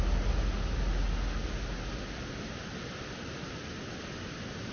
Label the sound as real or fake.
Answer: real